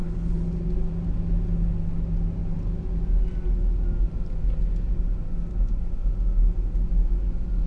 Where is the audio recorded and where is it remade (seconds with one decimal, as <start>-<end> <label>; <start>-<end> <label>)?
0.0-0.5 remade; 0.5-7.7 recorded